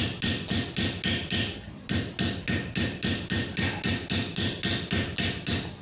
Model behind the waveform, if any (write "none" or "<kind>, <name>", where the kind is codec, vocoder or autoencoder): none